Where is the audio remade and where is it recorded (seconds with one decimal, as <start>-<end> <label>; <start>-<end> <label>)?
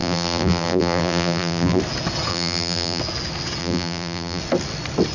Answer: 0.0-1.8 remade; 1.8-2.3 recorded; 2.3-3.0 remade; 3.0-3.6 recorded; 3.6-4.4 remade; 4.4-5.1 recorded